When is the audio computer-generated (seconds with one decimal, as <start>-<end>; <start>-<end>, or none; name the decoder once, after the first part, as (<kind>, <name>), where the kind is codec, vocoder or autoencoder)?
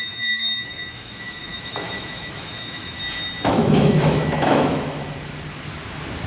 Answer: 0.0-3.0 (autoencoder, DAC-VAE); 3.5-5.0